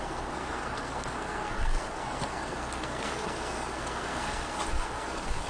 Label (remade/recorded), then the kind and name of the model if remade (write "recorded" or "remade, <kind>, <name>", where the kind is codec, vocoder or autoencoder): remade, codec, SNAC